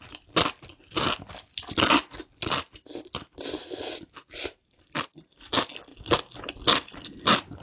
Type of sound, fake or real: real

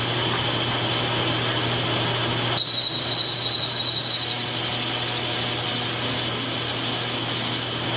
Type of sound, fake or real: real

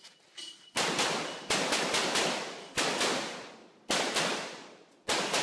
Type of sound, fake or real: real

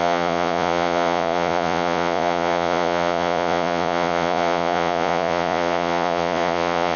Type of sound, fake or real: fake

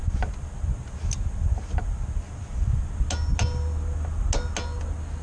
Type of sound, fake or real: real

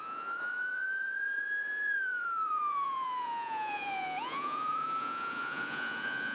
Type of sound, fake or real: fake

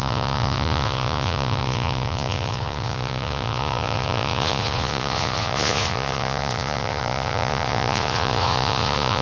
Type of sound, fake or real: fake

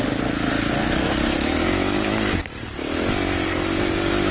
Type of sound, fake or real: real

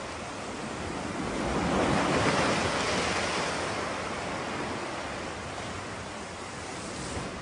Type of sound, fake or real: real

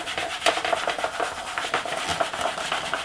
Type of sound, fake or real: real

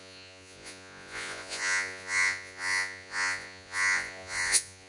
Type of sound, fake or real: fake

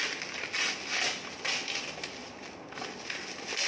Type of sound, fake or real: real